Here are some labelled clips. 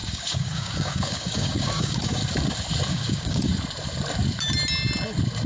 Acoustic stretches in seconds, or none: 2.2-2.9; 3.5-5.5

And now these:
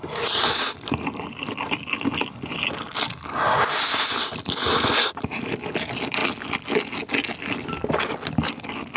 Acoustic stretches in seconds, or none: 0.0-9.0

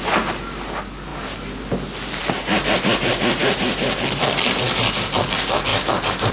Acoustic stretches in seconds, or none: 0.0-6.3

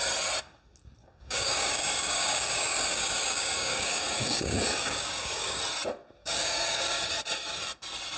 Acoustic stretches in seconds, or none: 0.0-1.0; 5.6-6.2; 7.1-8.2